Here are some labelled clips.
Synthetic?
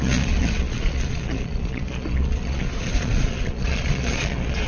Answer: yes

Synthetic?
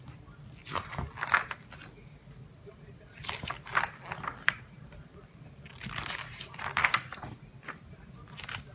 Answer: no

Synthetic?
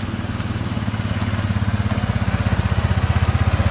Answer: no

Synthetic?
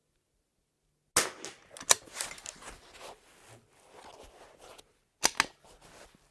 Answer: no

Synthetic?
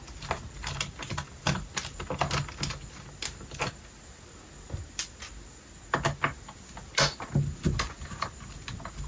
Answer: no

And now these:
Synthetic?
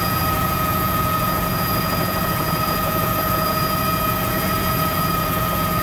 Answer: yes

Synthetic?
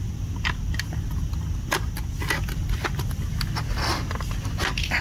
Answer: no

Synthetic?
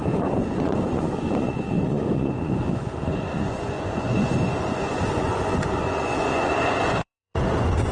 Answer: yes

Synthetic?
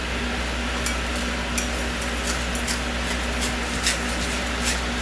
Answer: no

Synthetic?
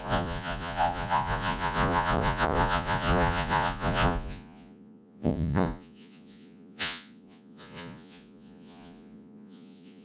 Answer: yes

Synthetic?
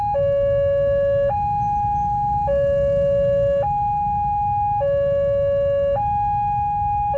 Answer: no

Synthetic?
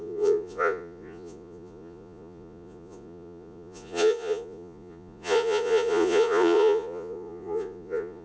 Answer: yes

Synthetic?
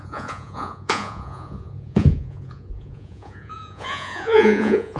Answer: yes